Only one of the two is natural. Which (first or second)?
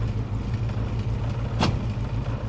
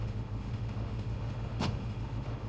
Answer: first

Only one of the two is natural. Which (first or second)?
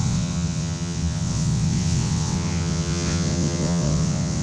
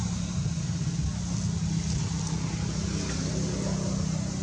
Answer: second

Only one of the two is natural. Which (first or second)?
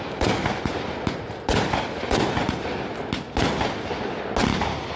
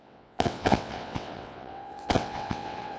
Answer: first